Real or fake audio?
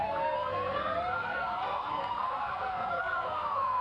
fake